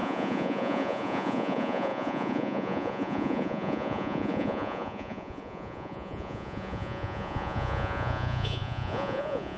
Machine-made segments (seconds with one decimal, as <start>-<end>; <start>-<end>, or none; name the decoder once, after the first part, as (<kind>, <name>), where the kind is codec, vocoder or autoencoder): 0.0-9.6 (vocoder, Vocos)